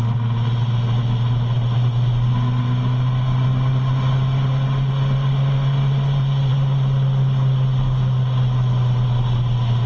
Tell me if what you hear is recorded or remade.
recorded